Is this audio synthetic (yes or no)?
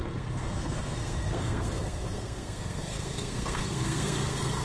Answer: yes